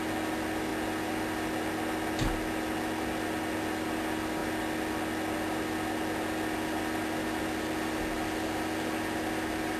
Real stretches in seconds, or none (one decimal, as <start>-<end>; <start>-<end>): 0.7-2.3; 4.4-7.4